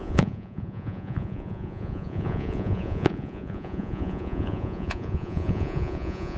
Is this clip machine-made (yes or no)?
yes